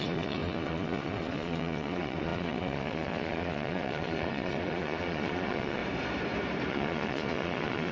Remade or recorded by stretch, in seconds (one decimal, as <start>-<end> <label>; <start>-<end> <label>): 0.0-5.8 remade; 5.8-6.7 recorded; 6.7-7.9 remade